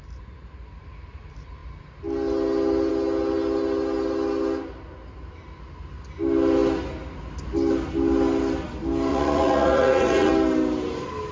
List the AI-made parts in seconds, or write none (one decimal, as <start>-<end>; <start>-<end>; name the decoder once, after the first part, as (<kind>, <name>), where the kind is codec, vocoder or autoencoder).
9.1-10.3 (vocoder, Vocos)